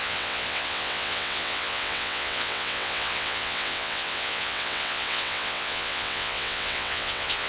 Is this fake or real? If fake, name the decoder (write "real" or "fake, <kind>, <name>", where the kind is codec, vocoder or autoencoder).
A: fake, vocoder, WaveNeXt